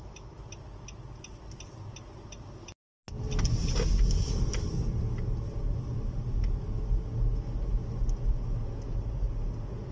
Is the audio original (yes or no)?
yes